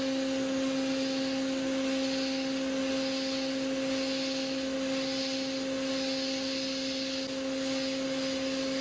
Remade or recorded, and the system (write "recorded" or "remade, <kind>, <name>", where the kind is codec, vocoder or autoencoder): recorded